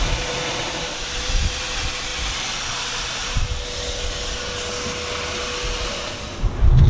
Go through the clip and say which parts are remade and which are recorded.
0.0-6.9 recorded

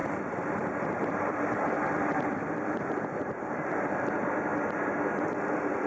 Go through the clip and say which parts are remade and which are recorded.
0.0-4.5 remade; 4.5-5.5 recorded; 5.5-5.9 remade

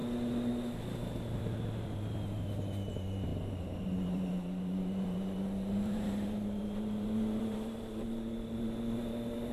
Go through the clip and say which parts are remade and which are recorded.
0.0-1.4 recorded; 1.4-9.5 remade

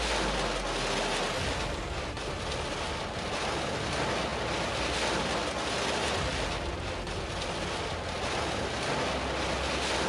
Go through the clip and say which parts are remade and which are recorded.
0.0-10.1 recorded

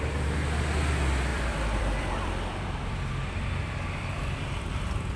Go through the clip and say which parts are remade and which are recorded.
0.0-1.3 recorded; 1.3-4.4 remade; 4.4-5.2 recorded

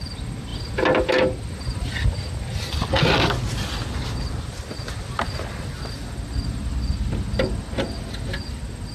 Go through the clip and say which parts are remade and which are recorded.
0.0-8.9 recorded

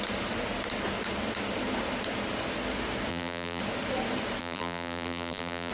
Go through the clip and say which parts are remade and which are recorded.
0.0-3.1 recorded; 3.1-3.6 remade; 3.6-4.4 recorded; 4.4-5.7 remade

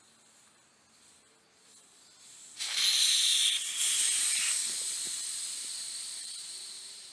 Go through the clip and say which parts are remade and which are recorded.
0.0-6.2 recorded; 6.2-7.1 remade